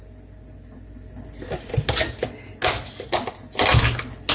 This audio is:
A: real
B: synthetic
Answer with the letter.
A